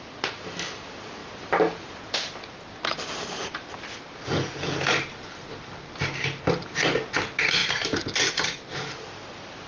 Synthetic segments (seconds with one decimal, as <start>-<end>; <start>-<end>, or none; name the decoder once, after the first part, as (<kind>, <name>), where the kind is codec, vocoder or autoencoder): none